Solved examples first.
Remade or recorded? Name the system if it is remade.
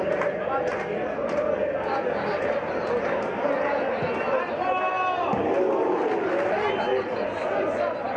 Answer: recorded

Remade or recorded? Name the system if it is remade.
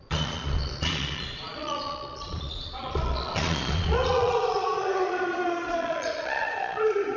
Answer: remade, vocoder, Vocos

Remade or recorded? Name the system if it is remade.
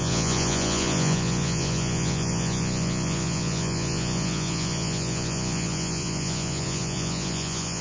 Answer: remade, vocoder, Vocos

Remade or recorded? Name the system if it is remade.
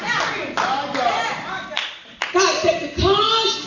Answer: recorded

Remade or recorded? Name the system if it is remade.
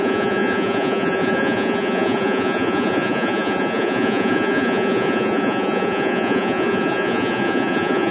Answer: remade, vocoder, Vocos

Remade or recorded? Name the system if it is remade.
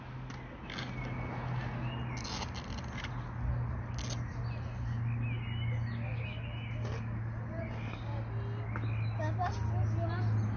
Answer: recorded